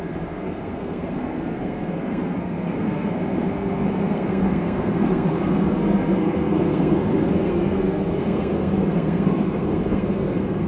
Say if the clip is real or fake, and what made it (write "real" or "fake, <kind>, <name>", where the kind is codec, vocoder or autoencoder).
fake, codec, SNAC